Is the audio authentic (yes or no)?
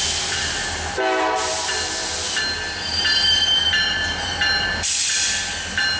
yes